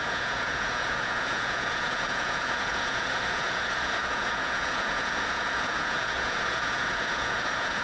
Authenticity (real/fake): fake